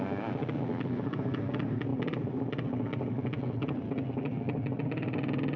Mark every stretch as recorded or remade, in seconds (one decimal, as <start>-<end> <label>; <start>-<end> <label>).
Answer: 0.0-5.6 recorded